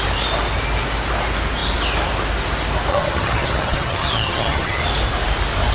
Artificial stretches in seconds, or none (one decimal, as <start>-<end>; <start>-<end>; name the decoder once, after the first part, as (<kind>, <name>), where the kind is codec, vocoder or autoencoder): 2.9-4.8 (vocoder, HiFi-GAN)